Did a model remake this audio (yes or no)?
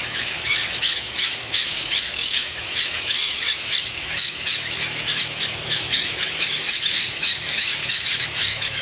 yes